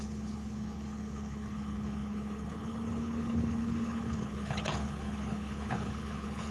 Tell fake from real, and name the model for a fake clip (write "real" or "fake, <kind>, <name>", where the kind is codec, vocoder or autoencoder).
fake, codec, HILCodec